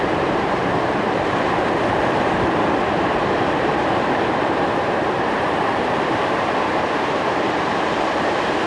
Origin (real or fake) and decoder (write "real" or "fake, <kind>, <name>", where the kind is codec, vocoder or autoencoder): fake, vocoder, BigVGAN v2